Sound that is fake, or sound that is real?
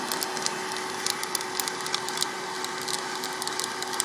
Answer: real